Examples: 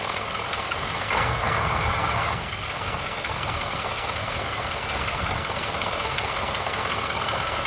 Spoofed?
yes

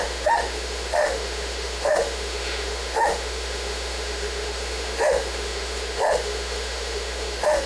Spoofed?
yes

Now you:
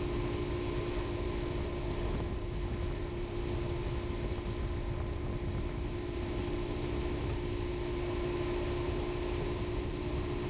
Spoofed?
no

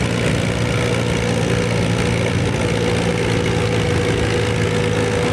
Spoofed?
no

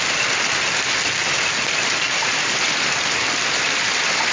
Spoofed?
no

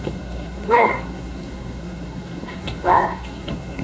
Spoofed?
yes